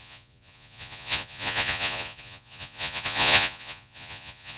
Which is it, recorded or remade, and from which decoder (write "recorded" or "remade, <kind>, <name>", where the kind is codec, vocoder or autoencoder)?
remade, vocoder, Vocos